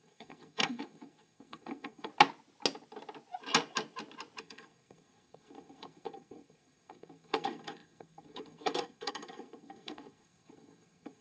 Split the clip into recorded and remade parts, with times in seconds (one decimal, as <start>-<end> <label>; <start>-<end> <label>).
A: 0.0-2.1 remade; 2.1-4.4 recorded; 4.4-11.2 remade

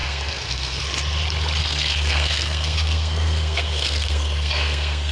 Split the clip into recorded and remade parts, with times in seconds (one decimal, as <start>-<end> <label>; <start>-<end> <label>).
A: 0.0-0.8 remade; 0.8-1.6 recorded; 1.6-5.1 remade

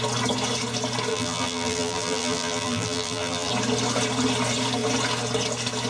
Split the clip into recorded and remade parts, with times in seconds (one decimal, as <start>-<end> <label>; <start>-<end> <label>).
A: 0.0-1.1 recorded; 1.1-3.5 remade; 3.5-5.9 recorded

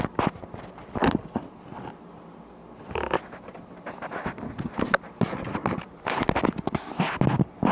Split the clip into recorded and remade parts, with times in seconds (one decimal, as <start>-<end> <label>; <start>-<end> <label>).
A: 0.0-7.7 recorded

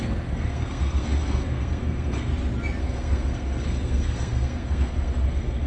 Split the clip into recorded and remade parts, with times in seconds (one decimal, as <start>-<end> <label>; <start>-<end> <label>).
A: 0.0-2.3 remade; 2.3-2.8 recorded; 2.8-5.7 remade

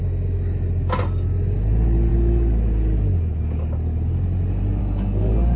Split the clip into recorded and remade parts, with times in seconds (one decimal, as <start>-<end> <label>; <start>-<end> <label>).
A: 0.0-5.6 recorded

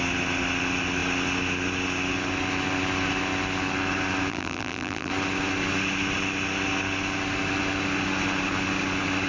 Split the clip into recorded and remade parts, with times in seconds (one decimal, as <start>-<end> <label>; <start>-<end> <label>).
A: 0.0-4.3 recorded; 4.3-5.1 remade; 5.1-9.3 recorded

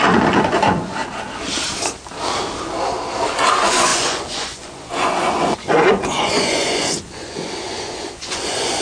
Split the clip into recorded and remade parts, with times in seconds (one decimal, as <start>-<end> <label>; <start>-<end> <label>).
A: 0.0-1.0 remade; 1.0-3.5 recorded; 3.5-8.8 remade